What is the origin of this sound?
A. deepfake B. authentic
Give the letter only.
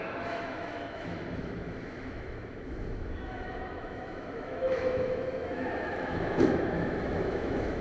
A